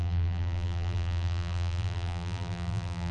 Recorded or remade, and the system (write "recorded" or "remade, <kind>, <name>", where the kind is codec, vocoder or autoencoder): remade, vocoder, BigVGAN v2